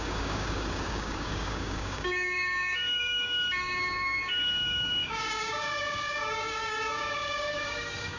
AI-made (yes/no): yes